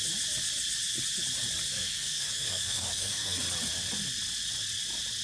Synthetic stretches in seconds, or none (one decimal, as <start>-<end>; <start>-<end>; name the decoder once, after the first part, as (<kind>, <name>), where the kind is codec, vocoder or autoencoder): 1.7-3.4 (codec, SNAC)